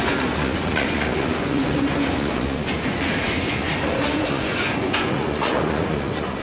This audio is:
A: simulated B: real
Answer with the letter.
A